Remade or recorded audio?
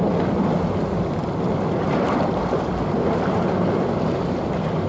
recorded